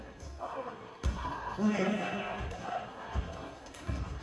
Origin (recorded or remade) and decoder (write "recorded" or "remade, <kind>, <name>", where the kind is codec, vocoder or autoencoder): remade, codec, SNAC